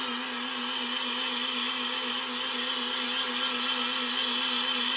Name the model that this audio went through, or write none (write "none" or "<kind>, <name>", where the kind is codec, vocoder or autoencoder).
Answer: none